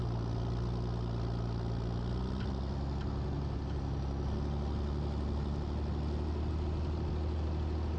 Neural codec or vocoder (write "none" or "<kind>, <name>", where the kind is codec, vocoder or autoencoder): none